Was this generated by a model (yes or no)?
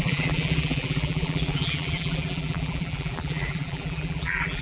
yes